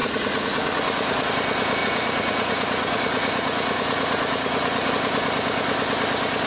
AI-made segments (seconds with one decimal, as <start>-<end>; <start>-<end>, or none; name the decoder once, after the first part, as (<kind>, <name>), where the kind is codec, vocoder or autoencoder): 0.0-1.3 (vocoder, Vocos); 1.8-4.9